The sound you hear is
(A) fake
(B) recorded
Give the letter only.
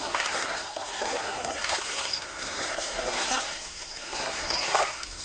A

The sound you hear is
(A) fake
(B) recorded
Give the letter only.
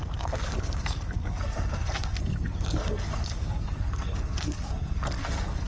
A